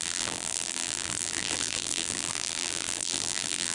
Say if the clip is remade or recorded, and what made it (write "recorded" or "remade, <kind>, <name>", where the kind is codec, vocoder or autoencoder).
remade, vocoder, BigVGAN v2